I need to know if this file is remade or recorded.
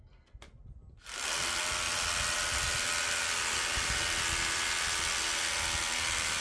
recorded